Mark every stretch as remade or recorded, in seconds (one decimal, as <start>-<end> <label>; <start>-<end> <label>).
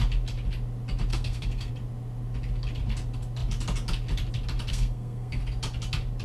0.0-1.1 recorded; 1.1-1.7 remade; 1.7-4.7 recorded; 4.7-5.4 remade; 5.4-6.2 recorded